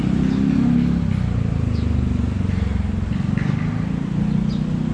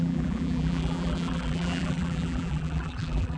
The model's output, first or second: second